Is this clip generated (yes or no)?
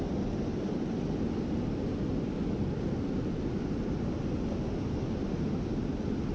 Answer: no